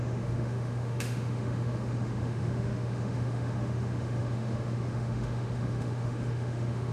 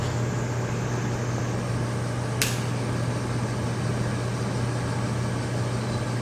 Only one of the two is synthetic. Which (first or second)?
first